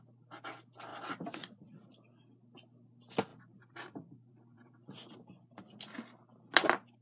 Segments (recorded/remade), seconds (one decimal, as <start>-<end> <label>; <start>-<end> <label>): 0.0-0.9 recorded; 0.9-1.9 remade; 1.9-3.3 recorded; 3.3-5.6 remade; 5.6-7.0 recorded